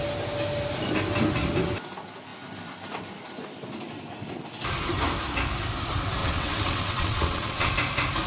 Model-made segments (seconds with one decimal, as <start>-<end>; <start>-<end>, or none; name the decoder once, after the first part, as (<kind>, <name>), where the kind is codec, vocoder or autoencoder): 6.2-7.7 (vocoder, WaveNeXt)